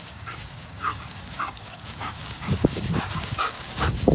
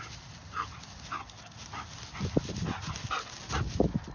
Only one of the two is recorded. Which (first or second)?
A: second